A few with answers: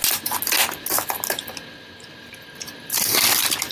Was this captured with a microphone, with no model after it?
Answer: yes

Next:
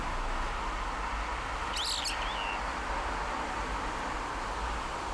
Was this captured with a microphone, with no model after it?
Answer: yes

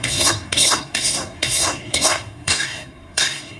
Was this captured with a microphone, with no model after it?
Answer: no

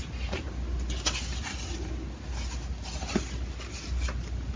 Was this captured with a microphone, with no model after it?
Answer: yes